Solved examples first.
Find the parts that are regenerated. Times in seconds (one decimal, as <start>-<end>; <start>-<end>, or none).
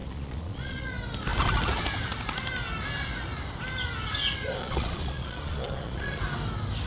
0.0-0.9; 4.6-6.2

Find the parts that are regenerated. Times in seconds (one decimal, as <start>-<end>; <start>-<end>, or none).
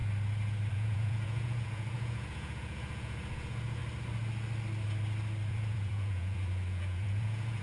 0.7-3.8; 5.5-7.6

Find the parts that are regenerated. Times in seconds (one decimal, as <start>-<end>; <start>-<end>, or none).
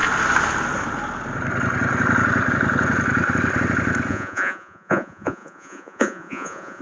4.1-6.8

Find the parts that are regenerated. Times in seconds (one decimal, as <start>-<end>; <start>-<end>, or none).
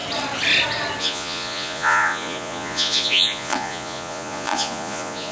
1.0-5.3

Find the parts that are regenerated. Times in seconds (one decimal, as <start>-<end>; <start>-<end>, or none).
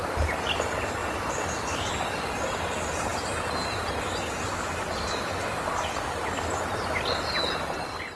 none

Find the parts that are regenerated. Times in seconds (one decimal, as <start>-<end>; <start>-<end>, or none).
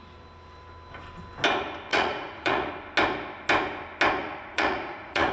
1.9-2.7; 4.2-5.3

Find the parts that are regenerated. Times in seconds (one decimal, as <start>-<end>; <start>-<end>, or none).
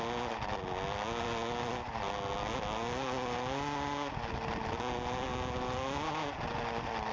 none